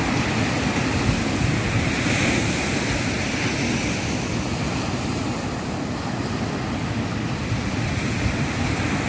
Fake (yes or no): no